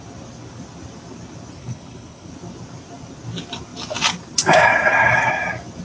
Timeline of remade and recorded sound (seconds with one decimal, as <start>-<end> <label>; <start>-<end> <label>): 0.0-1.6 recorded; 1.6-2.3 remade; 2.3-5.8 recorded